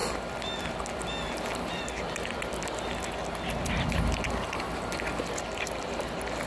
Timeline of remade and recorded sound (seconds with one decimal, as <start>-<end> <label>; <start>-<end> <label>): 0.0-6.5 recorded